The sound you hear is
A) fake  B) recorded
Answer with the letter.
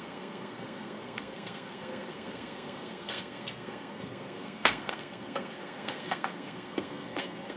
A